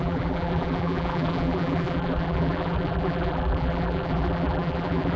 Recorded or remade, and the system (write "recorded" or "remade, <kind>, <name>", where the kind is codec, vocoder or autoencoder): remade, vocoder, BigVGAN v2